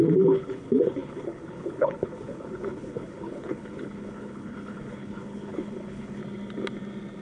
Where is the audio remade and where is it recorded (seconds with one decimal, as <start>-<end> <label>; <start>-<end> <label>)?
0.0-6.2 remade; 6.2-7.2 recorded